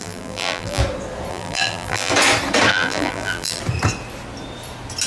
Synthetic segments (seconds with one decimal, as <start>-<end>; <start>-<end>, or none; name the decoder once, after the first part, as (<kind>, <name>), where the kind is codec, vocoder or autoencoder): 0.0-0.8 (vocoder, BigVGAN v2); 1.3-2.1; 2.7-3.6